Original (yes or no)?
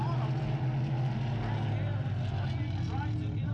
yes